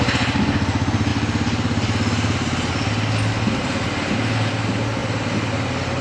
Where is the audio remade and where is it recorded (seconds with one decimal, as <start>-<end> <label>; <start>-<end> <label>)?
0.0-1.1 recorded; 1.1-4.5 remade; 4.5-5.0 recorded; 5.0-6.0 remade